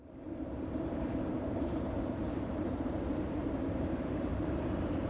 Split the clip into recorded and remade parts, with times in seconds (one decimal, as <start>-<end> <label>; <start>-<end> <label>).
0.0-4.3 remade; 4.3-5.1 recorded